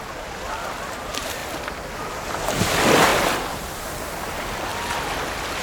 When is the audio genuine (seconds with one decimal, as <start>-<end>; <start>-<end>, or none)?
0.0-5.6